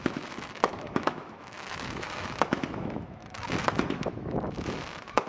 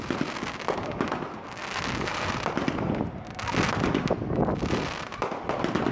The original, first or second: second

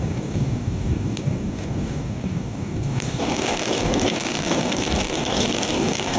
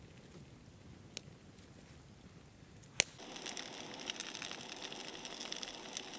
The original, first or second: second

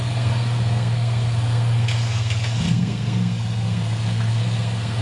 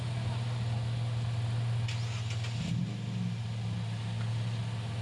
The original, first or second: second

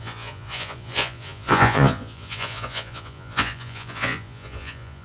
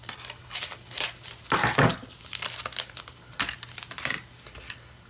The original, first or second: second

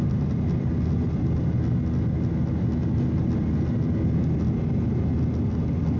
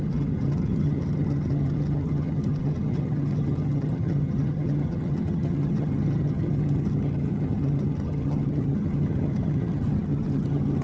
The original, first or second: first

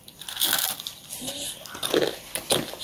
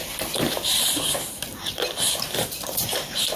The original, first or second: first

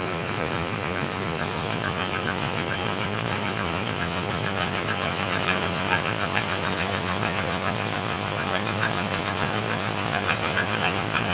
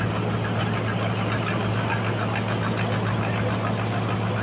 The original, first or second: second